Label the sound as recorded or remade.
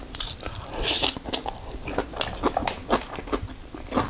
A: recorded